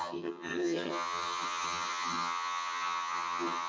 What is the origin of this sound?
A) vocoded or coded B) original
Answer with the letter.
A